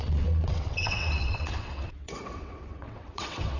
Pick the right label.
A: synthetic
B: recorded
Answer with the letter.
A